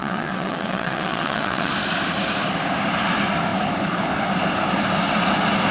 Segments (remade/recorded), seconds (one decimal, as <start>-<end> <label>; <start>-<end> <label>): 0.0-1.7 remade; 1.7-5.7 recorded

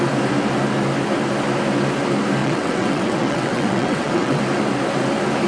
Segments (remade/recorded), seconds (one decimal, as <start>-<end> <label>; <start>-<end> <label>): 0.0-2.4 recorded; 2.4-4.4 remade; 4.4-5.5 recorded

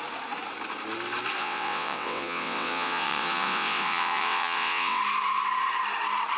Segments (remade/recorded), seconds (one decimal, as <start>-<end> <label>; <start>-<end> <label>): 0.0-1.4 recorded; 1.4-5.0 remade; 5.0-6.4 recorded

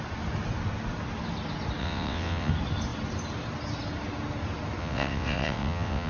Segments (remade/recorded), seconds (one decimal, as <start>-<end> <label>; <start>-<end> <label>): 0.0-1.8 recorded; 1.8-2.5 remade; 2.5-4.8 recorded; 4.8-6.1 remade

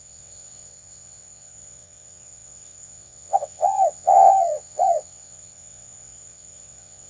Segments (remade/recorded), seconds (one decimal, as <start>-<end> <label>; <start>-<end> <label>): 0.0-7.1 remade